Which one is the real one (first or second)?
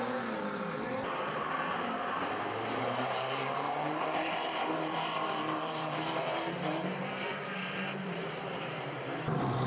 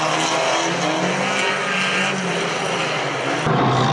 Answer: second